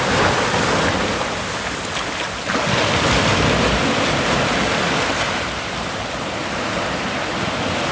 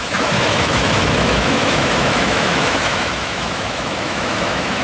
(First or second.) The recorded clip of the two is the first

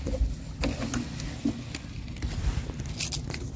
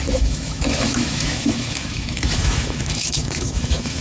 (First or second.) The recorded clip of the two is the first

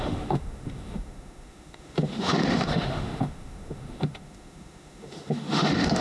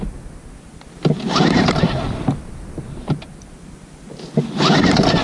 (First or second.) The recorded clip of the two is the second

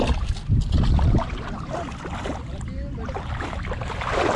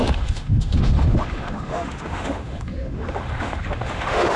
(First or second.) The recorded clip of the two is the first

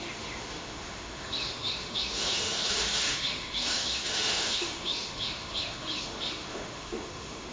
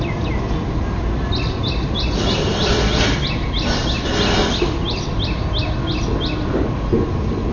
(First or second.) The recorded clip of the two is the second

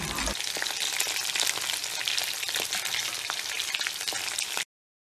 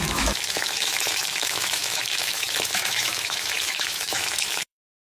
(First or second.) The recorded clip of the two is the first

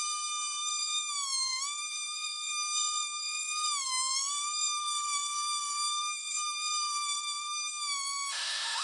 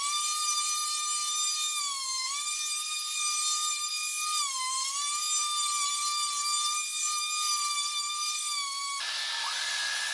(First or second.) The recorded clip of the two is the second